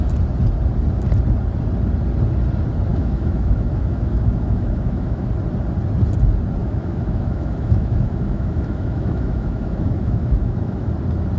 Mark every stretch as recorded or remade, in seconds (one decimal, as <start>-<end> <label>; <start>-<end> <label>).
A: 0.0-2.9 recorded; 2.9-5.3 remade; 5.3-6.6 recorded; 6.6-10.9 remade; 10.9-11.4 recorded